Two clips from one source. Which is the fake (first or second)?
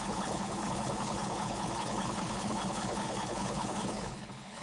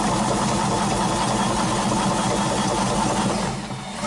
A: first